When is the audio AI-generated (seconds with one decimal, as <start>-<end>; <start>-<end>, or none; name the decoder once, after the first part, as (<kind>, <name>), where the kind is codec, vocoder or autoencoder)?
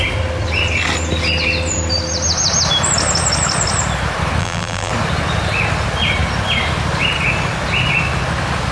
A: 4.4-4.9 (vocoder, BigVGAN v2)